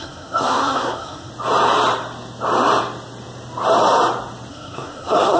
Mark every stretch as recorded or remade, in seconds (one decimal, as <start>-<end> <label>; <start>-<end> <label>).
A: 0.0-1.3 remade; 1.3-4.5 recorded; 4.5-5.4 remade